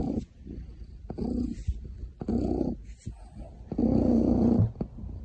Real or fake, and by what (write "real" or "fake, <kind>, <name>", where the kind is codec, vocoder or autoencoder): real